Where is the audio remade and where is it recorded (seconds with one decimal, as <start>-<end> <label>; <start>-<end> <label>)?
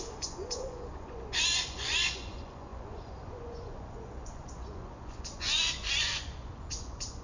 0.0-7.2 remade